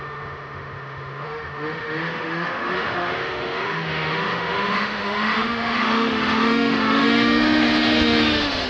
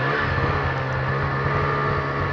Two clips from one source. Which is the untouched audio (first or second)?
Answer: second